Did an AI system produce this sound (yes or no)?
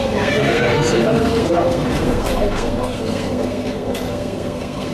yes